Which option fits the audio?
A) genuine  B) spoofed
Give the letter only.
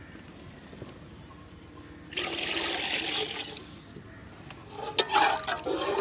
A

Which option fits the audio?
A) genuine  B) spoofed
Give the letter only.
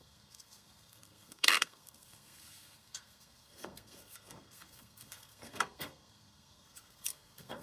B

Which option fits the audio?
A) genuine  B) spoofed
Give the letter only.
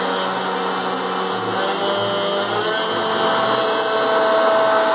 A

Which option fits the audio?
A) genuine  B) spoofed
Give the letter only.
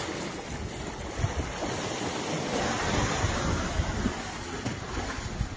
A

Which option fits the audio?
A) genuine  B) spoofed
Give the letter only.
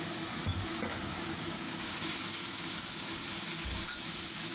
B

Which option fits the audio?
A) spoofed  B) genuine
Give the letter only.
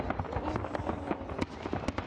B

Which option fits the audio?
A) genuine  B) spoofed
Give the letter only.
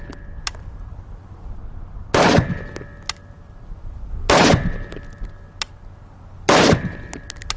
A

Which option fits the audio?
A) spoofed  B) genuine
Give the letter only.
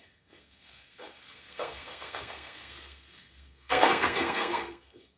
A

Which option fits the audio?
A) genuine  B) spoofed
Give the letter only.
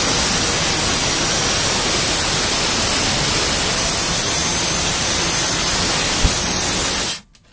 A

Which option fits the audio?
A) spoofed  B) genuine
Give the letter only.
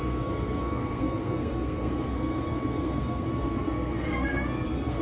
A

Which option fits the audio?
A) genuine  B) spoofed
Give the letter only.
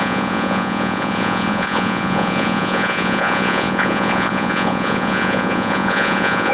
B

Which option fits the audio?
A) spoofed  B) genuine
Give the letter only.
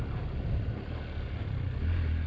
B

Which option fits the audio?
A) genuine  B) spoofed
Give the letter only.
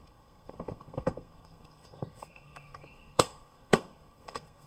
B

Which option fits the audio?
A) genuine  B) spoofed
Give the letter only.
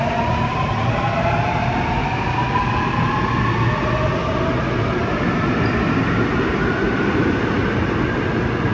A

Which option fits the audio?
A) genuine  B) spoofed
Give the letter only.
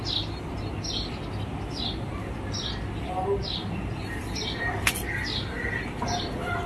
A